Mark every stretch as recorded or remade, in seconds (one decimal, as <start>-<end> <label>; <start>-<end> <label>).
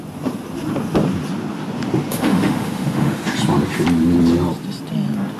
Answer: 0.0-2.1 recorded; 2.1-3.2 remade; 3.2-5.4 recorded